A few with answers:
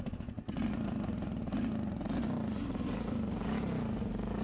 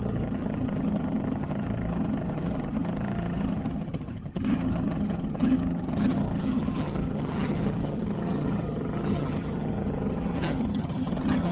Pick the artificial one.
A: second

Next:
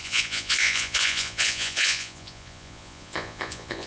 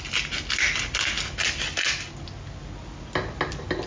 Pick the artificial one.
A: first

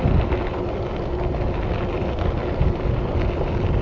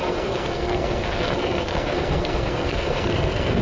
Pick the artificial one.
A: second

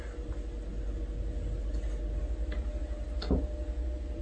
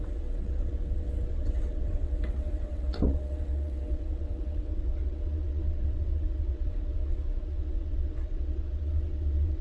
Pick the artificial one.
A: second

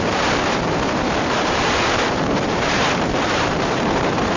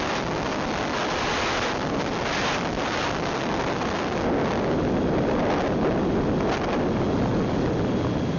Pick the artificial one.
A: first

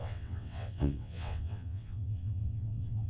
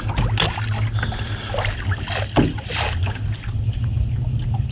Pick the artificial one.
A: first